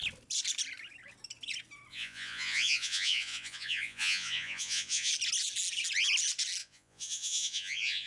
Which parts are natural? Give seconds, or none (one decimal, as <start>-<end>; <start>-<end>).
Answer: 0.0-1.9; 5.1-6.6